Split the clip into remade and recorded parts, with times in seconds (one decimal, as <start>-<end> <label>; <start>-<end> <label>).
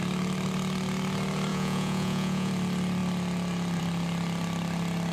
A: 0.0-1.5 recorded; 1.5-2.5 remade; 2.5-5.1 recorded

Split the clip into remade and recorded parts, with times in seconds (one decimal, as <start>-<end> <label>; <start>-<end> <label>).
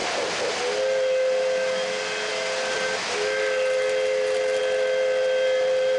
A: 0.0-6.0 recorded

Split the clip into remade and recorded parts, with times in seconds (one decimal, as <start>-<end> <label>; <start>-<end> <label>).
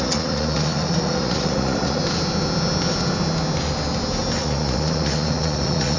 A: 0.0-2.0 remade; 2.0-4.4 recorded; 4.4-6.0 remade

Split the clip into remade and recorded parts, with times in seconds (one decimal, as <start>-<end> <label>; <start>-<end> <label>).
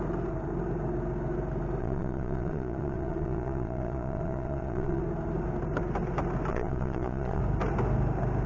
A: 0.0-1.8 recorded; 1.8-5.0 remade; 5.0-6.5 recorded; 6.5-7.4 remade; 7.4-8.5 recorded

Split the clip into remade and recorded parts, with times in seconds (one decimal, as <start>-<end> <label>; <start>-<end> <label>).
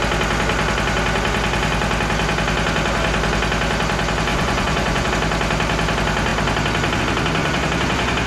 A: 0.0-4.3 recorded; 4.3-5.1 remade; 5.1-7.4 recorded; 7.4-8.3 remade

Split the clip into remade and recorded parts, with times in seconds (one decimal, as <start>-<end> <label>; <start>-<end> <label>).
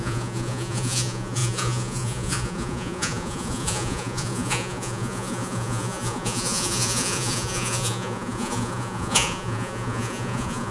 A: 0.0-10.7 remade